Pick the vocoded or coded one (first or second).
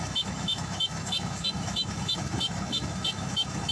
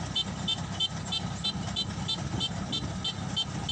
first